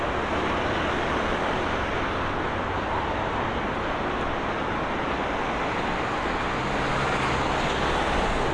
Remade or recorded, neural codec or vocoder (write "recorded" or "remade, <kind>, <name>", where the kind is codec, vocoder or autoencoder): recorded